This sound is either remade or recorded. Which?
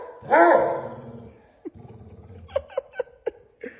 recorded